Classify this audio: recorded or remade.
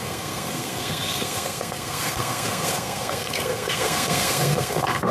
remade